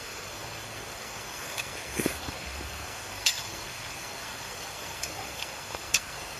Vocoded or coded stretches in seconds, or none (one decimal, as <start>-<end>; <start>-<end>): 0.0-6.4